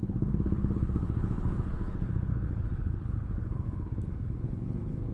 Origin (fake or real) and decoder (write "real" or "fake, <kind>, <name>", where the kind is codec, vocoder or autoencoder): fake, codec, HILCodec